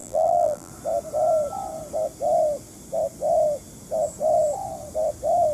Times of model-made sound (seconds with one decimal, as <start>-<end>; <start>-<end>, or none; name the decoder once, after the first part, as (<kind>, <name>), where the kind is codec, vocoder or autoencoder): 0.0-0.7 (vocoder, BigVGAN v2)